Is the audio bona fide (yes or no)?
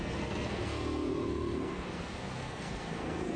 no